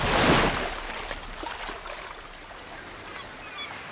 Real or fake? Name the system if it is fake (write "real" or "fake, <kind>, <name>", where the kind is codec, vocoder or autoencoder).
real